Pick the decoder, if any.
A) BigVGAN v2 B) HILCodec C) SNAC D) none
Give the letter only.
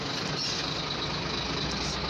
D